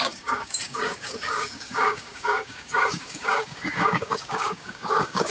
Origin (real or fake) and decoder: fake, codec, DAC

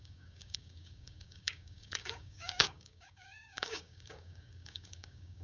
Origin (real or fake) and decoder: fake, codec, DAC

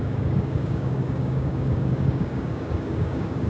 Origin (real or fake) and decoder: fake, codec, DAC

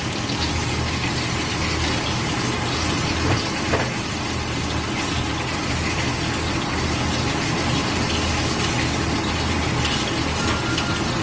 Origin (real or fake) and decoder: real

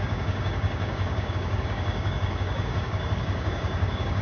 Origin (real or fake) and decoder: fake, codec, DAC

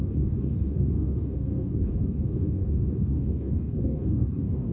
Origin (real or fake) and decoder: fake, codec, DAC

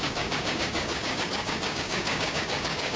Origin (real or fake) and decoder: fake, codec, DAC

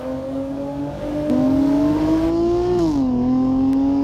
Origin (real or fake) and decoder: fake, codec, DAC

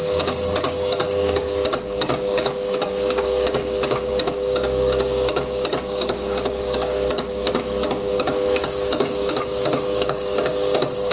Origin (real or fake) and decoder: fake, codec, DAC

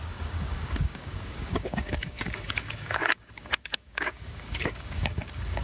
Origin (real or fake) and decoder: fake, codec, DAC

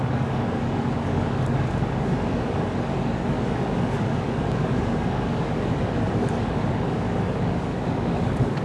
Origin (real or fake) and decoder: fake, codec, DAC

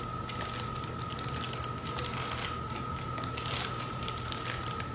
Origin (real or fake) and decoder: real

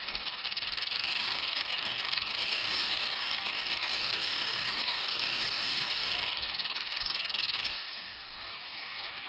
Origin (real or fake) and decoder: fake, codec, DAC